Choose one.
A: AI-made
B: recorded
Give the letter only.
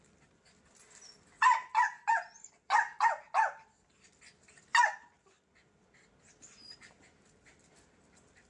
B